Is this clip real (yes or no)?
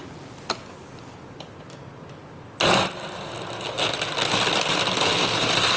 yes